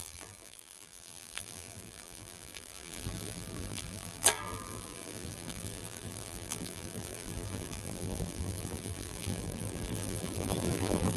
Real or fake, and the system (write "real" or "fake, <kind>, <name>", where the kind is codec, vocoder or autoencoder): fake, vocoder, BigVGAN v2